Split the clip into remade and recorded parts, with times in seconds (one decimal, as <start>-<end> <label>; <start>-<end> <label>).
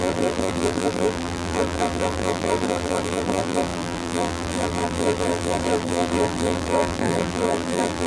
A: 0.0-8.1 remade